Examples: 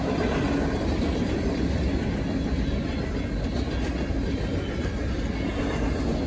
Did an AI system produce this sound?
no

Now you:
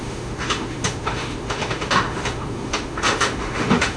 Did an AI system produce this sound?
yes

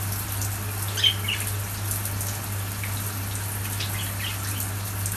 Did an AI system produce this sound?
no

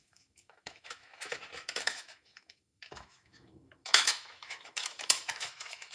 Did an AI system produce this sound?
yes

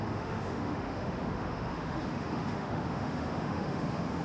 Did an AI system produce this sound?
yes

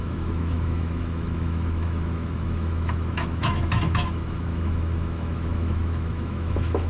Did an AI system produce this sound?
yes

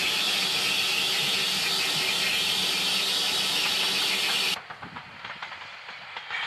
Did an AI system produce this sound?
no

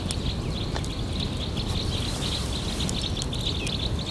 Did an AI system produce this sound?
no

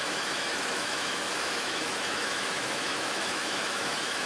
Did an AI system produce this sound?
yes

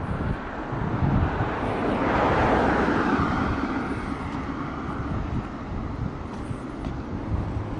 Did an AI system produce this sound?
no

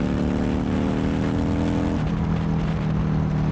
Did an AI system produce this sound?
no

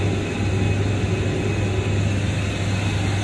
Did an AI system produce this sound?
no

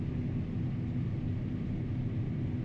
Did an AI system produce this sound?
no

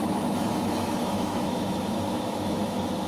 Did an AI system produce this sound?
yes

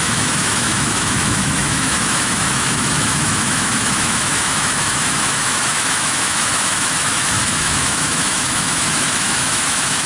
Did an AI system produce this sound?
yes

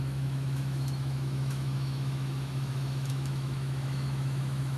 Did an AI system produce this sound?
yes